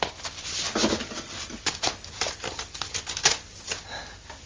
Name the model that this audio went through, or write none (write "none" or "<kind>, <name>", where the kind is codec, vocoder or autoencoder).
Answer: none